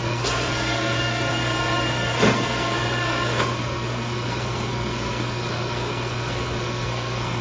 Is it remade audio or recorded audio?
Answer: remade